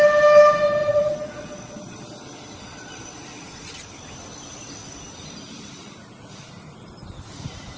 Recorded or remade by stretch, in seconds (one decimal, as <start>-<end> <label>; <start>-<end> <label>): 0.0-0.8 recorded; 0.8-3.8 remade; 3.8-7.8 recorded